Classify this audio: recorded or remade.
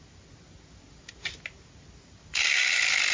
recorded